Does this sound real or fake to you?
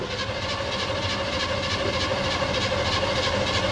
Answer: real